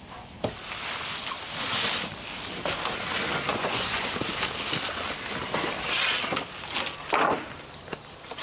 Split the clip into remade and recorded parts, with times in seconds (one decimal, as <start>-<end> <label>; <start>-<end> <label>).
0.0-3.5 recorded; 3.5-4.1 remade; 4.1-8.4 recorded